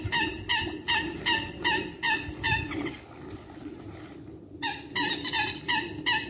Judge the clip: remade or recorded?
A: recorded